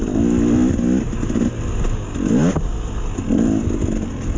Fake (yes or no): no